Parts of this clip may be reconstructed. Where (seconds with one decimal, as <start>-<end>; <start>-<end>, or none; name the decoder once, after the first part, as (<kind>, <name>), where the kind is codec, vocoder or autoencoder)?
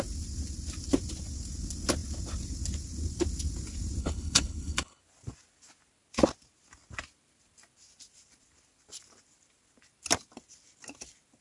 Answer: 4.0-5.0 (codec, HILCodec)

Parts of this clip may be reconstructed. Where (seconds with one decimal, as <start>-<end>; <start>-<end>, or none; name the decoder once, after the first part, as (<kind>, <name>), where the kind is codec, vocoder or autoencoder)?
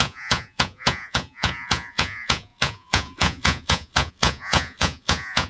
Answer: 0.0-5.5 (vocoder, Vocos)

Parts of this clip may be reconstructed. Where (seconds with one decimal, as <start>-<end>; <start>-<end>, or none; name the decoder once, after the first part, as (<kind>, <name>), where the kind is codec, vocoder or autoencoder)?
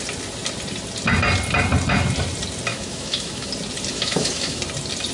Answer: 2.7-3.5 (autoencoder, DAC-VAE); 3.9-4.6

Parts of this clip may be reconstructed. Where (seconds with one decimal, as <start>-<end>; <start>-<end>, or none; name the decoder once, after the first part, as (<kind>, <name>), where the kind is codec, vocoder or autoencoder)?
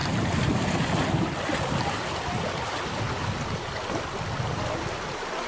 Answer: none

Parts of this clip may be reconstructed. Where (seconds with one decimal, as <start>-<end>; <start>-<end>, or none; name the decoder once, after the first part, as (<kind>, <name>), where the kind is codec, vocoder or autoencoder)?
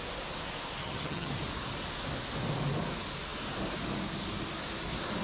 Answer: 0.8-1.3 (vocoder, HiFi-GAN)